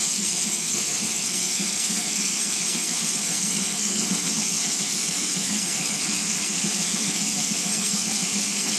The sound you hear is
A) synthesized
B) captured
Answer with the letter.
A